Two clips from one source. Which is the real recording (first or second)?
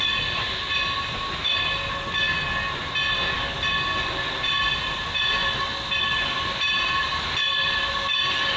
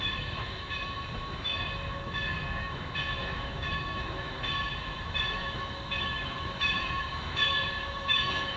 first